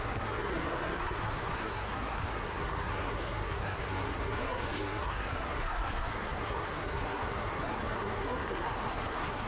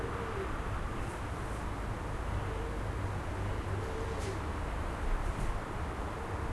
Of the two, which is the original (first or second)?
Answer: second